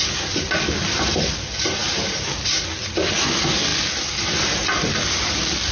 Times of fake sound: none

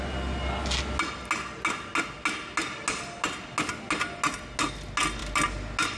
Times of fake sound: none

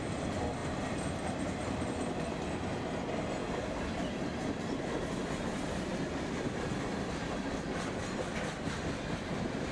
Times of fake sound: 0.6-1.9 (vocoder, BigVGAN v2)

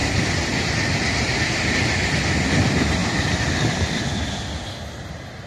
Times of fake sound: 3.0-4.8 (vocoder, BigVGAN v2)

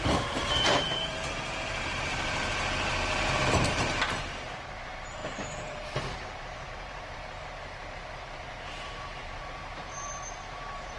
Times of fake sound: 0.0-2.4 (vocoder, BigVGAN v2); 2.9-11.0

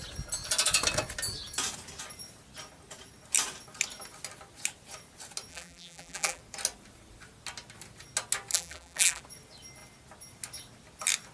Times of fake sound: 5.5-6.4 (vocoder, BigVGAN v2); 8.5-9.2

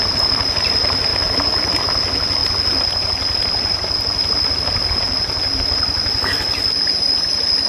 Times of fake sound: none

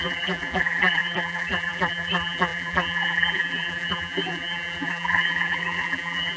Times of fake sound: 0.0-6.4 (vocoder, BigVGAN v2)